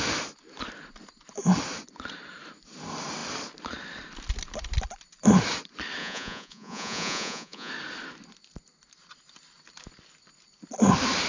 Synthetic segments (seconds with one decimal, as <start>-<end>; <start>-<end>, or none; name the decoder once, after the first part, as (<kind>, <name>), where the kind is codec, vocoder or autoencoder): 6.0-7.7 (vocoder, Vocos)